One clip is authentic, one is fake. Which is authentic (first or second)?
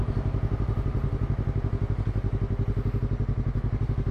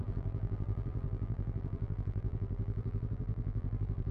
first